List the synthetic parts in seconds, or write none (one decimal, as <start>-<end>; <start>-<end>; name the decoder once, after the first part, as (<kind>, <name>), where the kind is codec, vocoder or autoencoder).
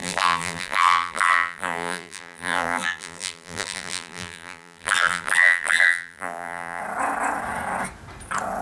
0.0-6.8 (vocoder, BigVGAN v2)